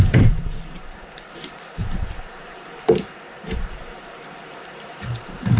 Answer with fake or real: fake